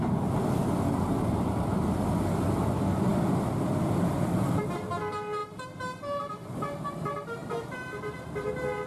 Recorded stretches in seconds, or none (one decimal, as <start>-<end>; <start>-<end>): 0.0-7.4; 8.5-8.9